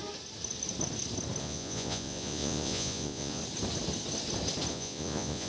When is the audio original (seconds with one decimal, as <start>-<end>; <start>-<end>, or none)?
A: 0.0-1.4; 3.4-4.7